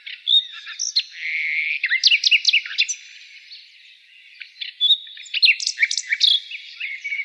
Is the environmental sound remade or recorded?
recorded